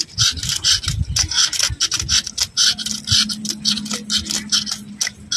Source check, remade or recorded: recorded